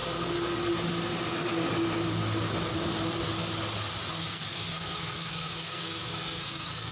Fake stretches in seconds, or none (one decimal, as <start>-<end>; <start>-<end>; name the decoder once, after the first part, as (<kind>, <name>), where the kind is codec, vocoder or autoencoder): 4.1-6.9 (codec, SNAC)